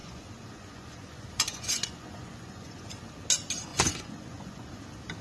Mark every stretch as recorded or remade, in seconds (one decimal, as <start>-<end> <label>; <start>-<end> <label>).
0.0-3.1 remade; 3.1-3.7 recorded; 3.7-4.8 remade; 4.8-5.2 recorded